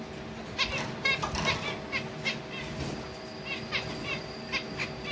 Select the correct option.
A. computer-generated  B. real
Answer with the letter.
B